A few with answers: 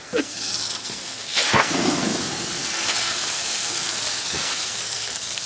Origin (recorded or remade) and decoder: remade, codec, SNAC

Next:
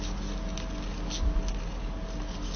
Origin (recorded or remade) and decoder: recorded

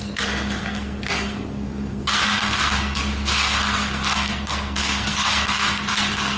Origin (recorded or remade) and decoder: remade, codec, SNAC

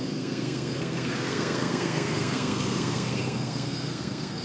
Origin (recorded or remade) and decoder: remade, codec, SNAC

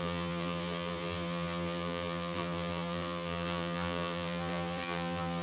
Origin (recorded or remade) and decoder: remade, vocoder, BigVGAN v2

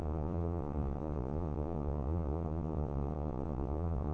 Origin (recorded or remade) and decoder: remade, vocoder, Vocos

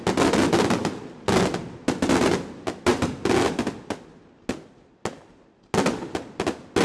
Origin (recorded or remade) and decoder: recorded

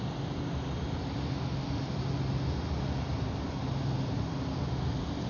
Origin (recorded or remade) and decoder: recorded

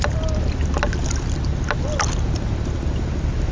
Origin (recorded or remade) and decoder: recorded